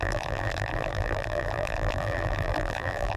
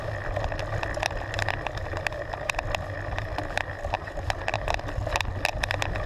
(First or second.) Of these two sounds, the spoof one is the first